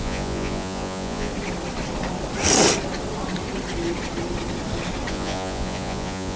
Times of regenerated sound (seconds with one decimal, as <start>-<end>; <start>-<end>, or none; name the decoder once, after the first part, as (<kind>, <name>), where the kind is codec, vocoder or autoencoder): 0.0-1.3 (vocoder, Vocos); 5.1-6.4